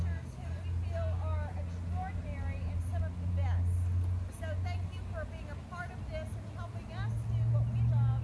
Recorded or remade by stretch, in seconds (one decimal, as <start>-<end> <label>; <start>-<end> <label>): 0.0-8.2 recorded